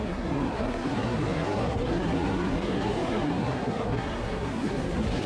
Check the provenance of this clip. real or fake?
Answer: fake